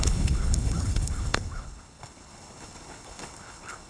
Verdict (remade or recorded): remade